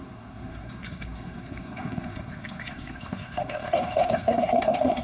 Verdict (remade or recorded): remade